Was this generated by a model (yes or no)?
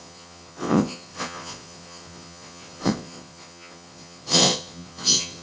yes